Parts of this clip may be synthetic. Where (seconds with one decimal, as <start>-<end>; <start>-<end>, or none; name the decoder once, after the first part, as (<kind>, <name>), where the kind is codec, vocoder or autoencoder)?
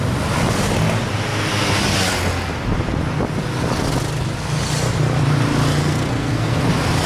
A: 5.8-6.6 (codec, SNAC)